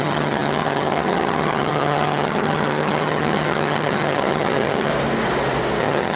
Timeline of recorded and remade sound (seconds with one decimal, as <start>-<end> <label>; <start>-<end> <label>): 0.0-4.9 remade; 4.9-5.8 recorded; 5.8-6.2 remade